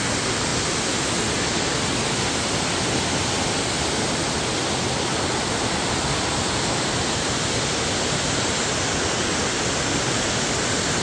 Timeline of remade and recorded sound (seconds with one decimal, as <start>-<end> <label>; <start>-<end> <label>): 0.0-11.0 recorded